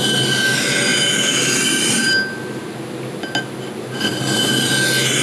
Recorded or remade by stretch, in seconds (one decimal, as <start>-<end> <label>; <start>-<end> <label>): 0.0-5.2 recorded